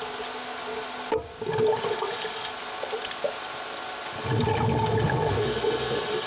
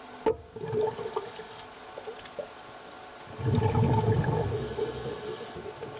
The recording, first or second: first